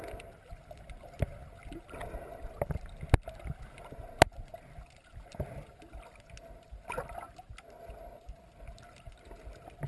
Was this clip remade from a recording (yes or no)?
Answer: no